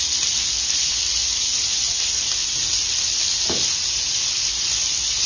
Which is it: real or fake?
real